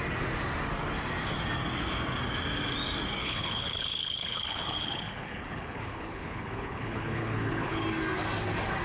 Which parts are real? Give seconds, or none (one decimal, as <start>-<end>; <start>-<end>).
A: 0.0-3.2; 7.8-8.8